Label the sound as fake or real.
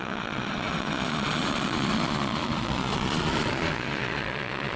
fake